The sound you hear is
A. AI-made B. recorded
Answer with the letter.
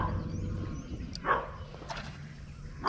B